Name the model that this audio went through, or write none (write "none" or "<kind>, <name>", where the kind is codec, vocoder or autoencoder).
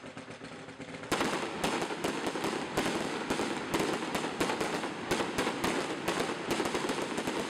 none